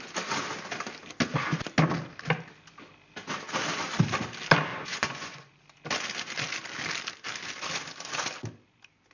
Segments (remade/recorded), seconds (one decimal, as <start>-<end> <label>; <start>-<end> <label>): 0.0-4.7 recorded; 4.7-5.5 remade; 5.5-9.1 recorded